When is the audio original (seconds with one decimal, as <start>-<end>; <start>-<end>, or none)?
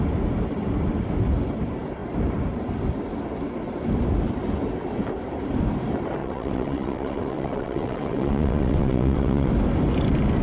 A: 0.0-6.2; 9.5-10.4